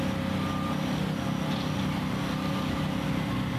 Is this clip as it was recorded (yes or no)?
yes